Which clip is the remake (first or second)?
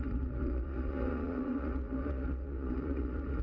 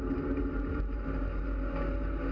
first